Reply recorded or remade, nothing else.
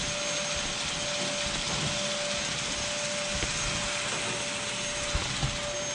recorded